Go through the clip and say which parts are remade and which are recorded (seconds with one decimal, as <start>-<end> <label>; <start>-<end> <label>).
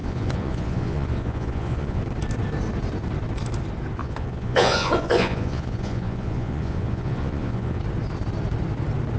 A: 0.0-2.0 remade; 2.0-4.0 recorded; 4.0-7.8 remade; 7.8-9.2 recorded